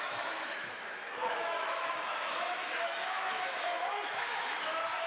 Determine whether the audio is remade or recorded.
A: remade